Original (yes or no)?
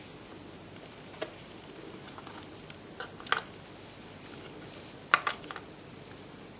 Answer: yes